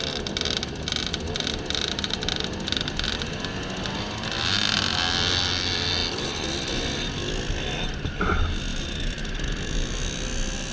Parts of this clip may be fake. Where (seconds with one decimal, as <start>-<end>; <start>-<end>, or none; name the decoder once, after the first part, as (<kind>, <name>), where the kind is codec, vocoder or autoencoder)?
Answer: 1.1-2.1 (vocoder, BigVGAN v2)